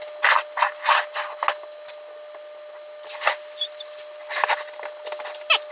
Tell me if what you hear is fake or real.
real